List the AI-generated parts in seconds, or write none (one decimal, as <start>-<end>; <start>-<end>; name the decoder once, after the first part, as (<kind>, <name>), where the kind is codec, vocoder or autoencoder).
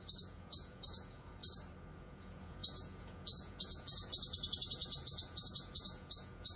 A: 0.0-1.4 (vocoder, Vocos); 2.0-6.6